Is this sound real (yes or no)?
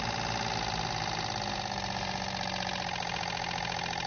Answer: yes